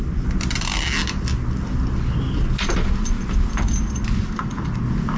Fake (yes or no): no